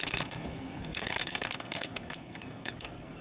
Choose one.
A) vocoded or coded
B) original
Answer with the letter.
A